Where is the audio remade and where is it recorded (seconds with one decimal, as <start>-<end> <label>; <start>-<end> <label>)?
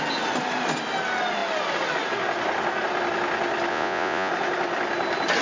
0.0-3.7 recorded; 3.7-4.3 remade; 4.3-5.4 recorded